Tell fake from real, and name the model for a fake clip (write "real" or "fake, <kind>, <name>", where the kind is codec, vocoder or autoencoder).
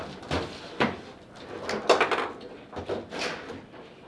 real